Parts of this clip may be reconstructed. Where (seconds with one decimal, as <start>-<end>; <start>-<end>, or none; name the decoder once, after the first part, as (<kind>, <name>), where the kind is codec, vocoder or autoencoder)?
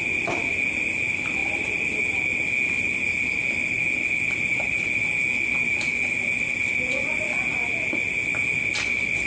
none